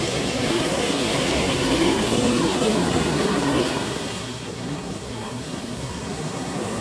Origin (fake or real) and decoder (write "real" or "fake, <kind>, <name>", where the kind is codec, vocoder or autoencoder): fake, codec, SNAC